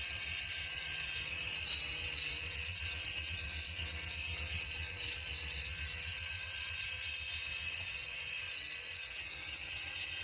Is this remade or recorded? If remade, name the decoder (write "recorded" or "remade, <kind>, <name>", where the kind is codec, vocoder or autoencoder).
remade, vocoder, WaveNeXt